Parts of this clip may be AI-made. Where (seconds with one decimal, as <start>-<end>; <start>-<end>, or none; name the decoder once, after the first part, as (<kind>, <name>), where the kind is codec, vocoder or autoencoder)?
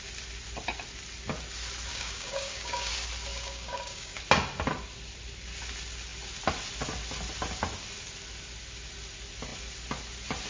1.9-2.9 (codec, DAC); 3.3-4.2